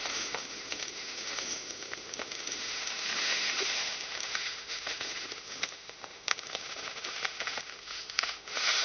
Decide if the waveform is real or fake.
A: fake